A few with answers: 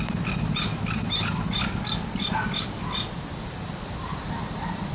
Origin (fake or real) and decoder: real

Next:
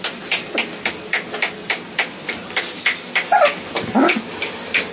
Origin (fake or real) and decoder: real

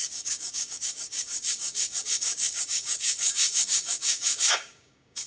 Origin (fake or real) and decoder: fake, codec, DAC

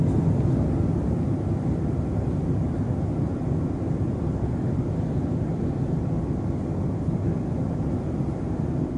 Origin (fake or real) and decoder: real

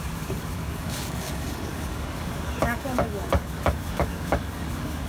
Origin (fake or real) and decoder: fake, codec, DAC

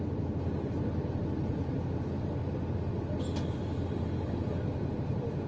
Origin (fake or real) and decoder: real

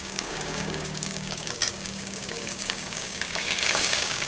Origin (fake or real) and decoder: fake, codec, DAC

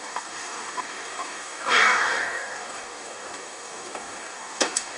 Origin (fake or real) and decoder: fake, codec, DAC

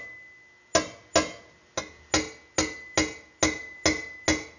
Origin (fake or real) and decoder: real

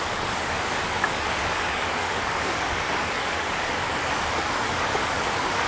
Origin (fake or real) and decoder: fake, codec, DAC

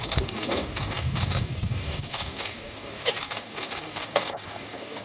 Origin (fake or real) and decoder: fake, codec, DAC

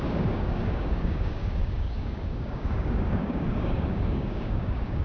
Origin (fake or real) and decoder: fake, codec, DAC